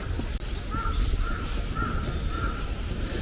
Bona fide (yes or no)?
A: yes